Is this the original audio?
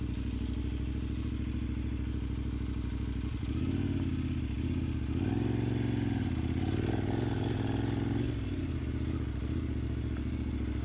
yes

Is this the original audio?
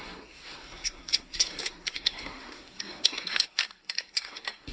no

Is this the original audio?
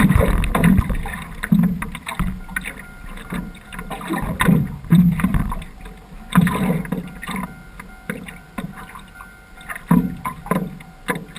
yes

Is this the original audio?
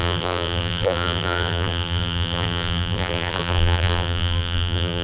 no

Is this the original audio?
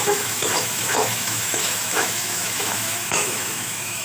no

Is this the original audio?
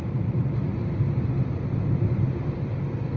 yes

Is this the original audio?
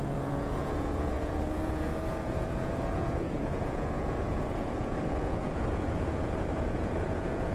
no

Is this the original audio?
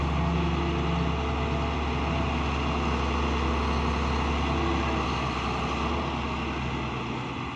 yes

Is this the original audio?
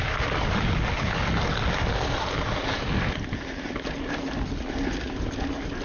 yes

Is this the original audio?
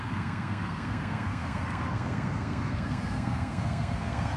no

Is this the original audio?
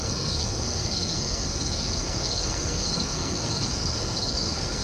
no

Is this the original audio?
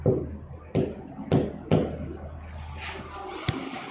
yes